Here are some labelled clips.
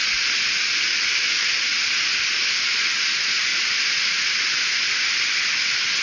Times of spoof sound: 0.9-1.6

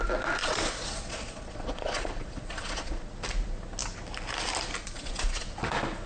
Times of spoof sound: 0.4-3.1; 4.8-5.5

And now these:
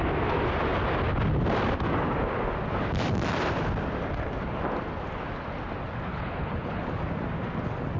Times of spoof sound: 6.1-6.8

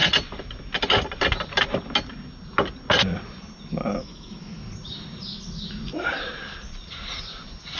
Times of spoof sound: 4.0-4.6